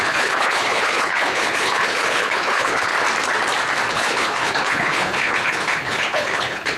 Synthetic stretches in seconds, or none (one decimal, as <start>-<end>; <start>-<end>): 0.0-2.9; 3.9-6.8